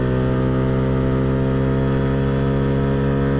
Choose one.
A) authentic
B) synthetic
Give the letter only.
A